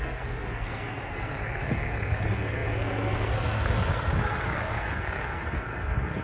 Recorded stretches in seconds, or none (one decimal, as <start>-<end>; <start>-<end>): none